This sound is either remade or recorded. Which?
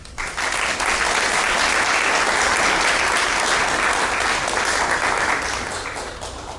recorded